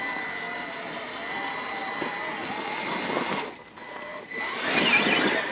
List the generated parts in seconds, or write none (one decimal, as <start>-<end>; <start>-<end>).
none